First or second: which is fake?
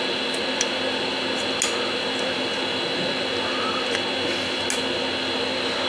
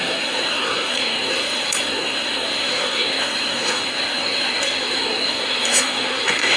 second